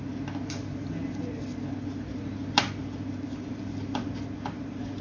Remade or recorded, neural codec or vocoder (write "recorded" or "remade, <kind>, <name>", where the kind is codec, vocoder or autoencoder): recorded